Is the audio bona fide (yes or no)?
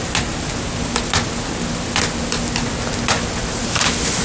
yes